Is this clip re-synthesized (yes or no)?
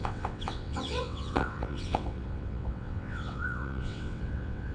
yes